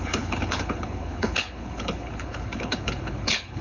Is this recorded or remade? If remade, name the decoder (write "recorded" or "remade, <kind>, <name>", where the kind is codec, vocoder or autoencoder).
remade, codec, HILCodec